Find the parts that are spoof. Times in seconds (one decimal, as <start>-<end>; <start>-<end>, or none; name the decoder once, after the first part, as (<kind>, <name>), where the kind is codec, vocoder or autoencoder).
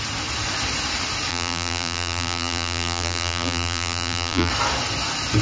1.3-4.5 (vocoder, BigVGAN v2)